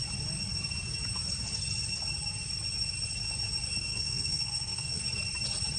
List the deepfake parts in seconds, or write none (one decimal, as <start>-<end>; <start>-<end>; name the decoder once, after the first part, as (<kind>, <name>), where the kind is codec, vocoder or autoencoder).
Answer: 3.9-5.0 (codec, SNAC)